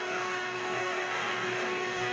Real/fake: fake